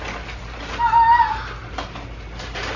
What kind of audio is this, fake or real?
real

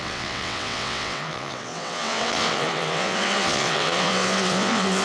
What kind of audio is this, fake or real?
fake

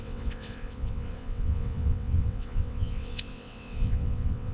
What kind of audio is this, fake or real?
fake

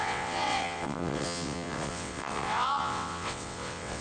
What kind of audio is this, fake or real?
fake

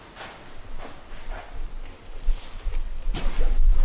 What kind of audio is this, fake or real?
real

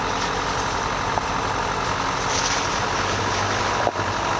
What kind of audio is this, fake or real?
real